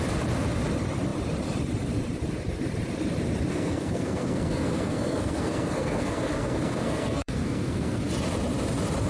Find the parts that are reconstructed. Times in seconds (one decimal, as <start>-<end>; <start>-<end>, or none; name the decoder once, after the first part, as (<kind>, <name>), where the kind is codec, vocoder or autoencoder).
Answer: 3.5-8.0 (codec, SNAC)